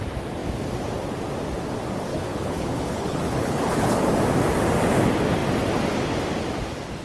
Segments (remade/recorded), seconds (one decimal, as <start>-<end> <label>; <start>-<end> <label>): 0.0-2.1 recorded; 2.1-4.1 remade; 4.1-7.0 recorded